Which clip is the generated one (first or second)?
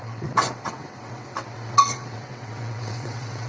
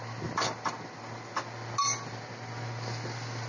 first